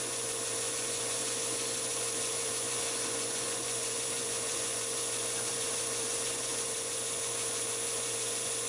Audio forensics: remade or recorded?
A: remade